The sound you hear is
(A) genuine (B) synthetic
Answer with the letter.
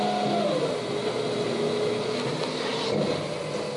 A